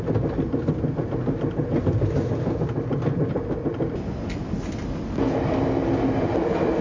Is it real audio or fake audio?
real